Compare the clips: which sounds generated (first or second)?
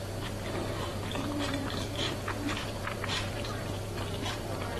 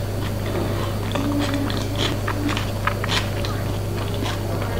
first